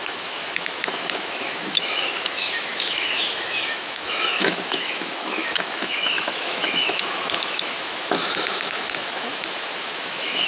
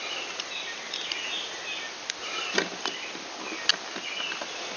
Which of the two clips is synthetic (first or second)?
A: first